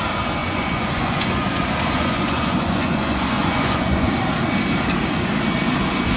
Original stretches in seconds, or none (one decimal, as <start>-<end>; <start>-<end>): 0.0-0.4; 4.1-6.2